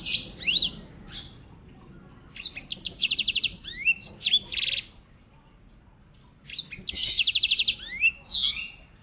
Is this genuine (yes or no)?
yes